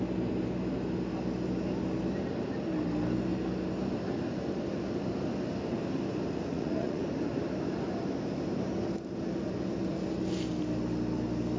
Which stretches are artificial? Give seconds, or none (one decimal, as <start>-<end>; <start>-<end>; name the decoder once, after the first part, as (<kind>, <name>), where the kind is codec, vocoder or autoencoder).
6.5-7.0 (vocoder, Vocos)